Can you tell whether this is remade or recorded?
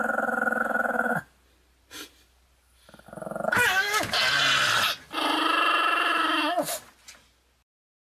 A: recorded